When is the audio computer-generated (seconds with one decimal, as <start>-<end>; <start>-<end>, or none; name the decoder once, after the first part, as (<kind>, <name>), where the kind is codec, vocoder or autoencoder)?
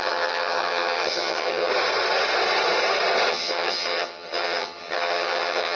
0.0-1.7 (vocoder, HiFi-GAN); 3.3-5.8